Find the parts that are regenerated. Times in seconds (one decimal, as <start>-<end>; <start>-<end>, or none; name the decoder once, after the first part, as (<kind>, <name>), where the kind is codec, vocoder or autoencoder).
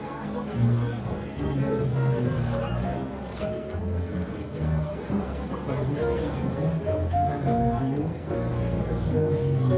0.0-9.8 (codec, SNAC)